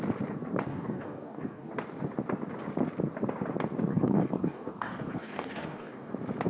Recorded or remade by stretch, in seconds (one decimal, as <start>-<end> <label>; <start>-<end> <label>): 0.0-0.7 recorded; 0.7-1.7 remade; 1.7-3.9 recorded; 3.9-6.1 remade; 6.1-6.5 recorded

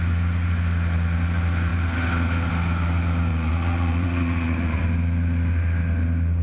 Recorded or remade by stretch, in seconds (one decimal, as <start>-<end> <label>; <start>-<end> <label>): 0.0-3.3 recorded; 3.3-4.8 remade; 4.8-6.4 recorded

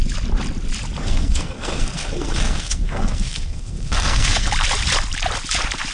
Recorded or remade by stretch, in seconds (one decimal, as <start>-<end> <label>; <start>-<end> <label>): 0.0-1.0 recorded; 1.0-4.5 remade; 4.5-5.9 recorded